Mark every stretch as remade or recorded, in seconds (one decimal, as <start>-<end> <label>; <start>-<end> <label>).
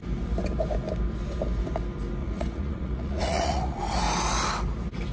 0.0-2.2 recorded; 2.2-3.8 remade; 3.8-5.1 recorded